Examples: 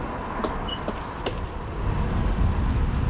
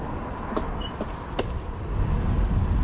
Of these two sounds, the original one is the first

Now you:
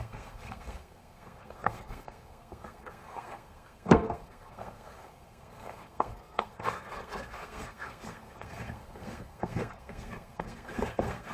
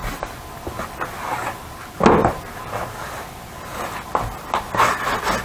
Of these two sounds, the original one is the second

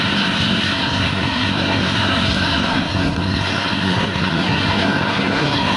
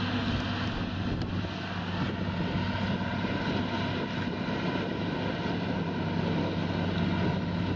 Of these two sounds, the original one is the second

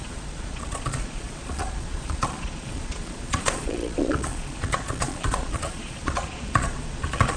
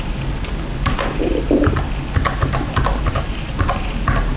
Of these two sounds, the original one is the second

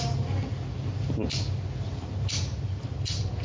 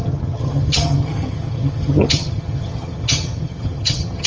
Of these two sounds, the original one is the first